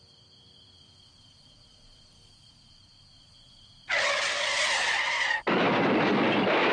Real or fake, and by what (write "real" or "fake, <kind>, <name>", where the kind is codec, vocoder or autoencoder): real